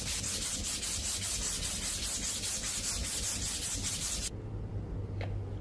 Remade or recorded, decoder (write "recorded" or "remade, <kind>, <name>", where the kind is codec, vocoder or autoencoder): recorded